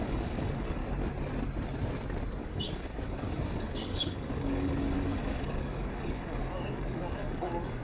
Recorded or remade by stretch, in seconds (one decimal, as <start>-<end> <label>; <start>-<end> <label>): 0.0-0.8 remade; 0.8-2.4 recorded; 2.4-7.8 remade